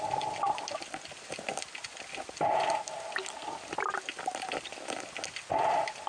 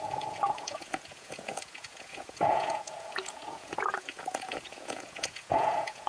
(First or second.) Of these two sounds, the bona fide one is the first